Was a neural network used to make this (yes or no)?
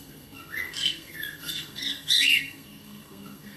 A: yes